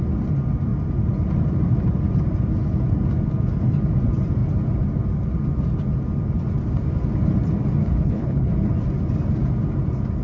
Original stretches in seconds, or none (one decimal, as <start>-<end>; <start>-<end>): 0.0-7.8; 8.5-10.2